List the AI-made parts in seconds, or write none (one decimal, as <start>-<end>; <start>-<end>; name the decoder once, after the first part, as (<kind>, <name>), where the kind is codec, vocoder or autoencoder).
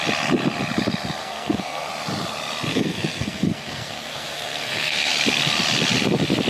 1.2-1.9 (codec, SNAC); 2.7-5.1